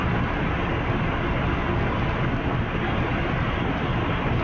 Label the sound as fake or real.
real